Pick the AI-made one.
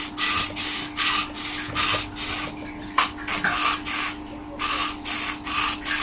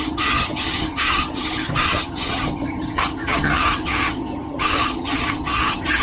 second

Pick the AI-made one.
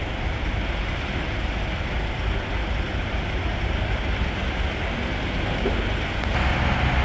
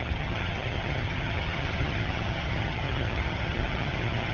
second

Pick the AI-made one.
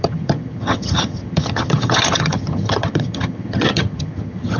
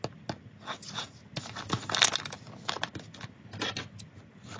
first